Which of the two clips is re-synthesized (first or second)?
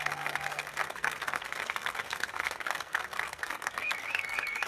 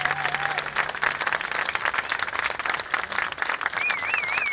first